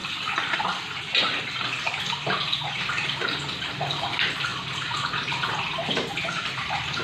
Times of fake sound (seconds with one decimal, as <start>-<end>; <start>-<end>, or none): none